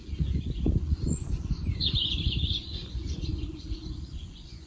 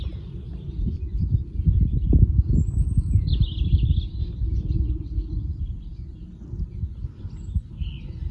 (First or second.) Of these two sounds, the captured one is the second